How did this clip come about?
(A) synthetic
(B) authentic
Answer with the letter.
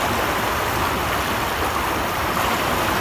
B